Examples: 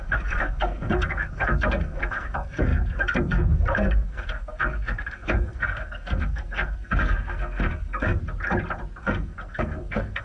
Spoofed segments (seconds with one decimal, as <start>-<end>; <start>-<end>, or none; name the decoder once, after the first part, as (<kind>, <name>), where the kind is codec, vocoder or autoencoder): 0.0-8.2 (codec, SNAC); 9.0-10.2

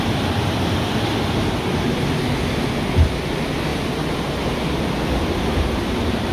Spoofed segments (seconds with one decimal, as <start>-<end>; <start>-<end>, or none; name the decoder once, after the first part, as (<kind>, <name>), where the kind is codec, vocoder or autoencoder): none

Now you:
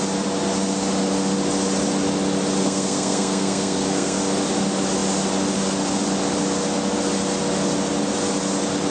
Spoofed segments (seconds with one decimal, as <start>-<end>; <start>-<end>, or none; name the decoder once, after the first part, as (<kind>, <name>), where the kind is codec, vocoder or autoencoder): 2.6-4.2 (codec, SNAC)